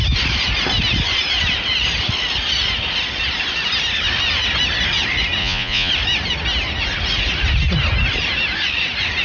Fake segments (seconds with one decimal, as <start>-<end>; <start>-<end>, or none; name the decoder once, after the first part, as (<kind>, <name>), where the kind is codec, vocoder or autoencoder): 5.4-5.9 (vocoder, Vocos)